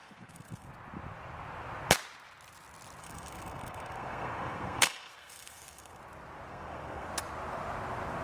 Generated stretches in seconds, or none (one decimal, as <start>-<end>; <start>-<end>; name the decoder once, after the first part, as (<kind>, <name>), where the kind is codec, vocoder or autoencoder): 0.0-0.7 (codec, SNAC); 3.0-6.0; 6.5-7.1